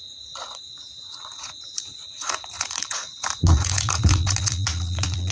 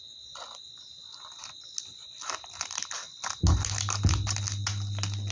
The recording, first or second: second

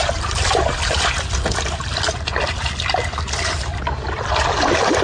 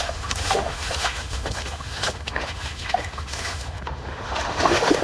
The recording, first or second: first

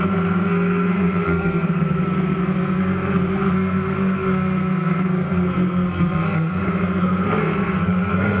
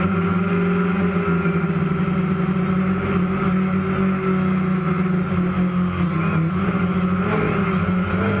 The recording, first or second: second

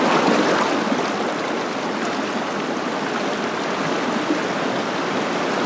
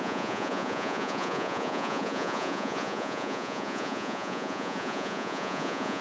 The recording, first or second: first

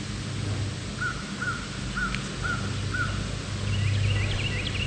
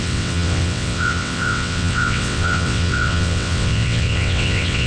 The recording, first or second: first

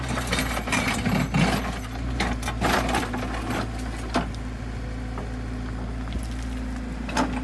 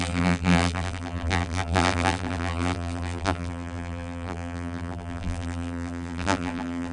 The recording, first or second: first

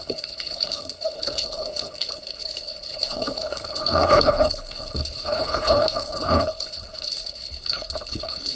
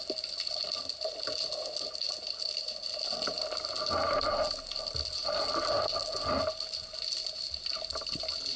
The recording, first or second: second